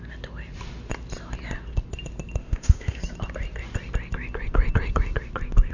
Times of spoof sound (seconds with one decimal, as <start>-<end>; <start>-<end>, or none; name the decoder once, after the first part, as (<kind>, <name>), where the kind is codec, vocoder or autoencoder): 2.4-3.0 (autoencoder, DAC-VAE)